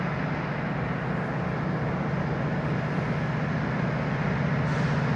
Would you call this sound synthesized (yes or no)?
no